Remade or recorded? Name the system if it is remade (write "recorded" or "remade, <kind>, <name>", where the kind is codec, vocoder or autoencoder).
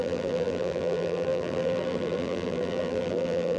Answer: remade, vocoder, BigVGAN v2